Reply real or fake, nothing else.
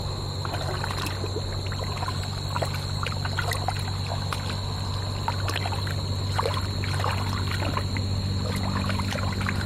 real